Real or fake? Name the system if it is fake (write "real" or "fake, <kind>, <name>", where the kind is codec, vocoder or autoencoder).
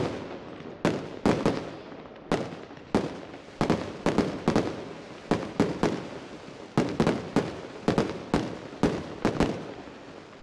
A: real